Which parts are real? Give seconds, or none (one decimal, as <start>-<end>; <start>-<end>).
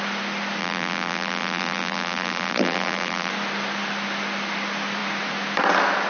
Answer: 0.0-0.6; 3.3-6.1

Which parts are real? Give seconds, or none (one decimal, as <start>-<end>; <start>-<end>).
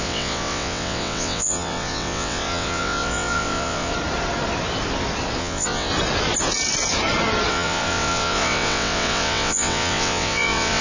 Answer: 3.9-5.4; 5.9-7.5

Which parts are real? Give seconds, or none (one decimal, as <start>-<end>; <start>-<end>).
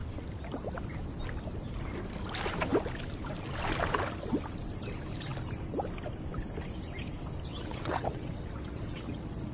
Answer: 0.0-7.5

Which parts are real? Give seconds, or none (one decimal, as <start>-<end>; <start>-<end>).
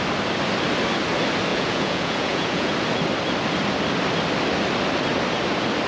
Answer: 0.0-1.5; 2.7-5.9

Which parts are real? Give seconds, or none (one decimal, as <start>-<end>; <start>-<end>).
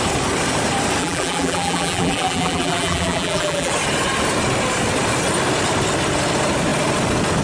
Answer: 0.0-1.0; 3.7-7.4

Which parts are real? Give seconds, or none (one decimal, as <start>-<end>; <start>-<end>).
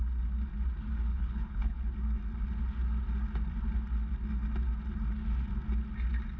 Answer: 0.0-1.1; 1.8-6.4